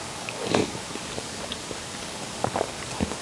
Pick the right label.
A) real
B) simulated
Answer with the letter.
B